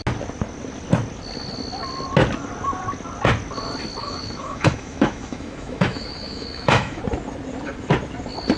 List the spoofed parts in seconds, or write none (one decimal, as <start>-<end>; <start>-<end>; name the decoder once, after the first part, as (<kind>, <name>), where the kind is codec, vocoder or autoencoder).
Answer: 4.0-7.0 (autoencoder, DAC-VAE)